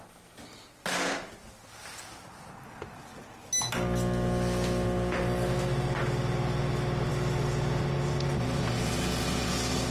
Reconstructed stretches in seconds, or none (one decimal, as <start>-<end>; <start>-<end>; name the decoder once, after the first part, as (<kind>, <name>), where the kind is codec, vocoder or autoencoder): none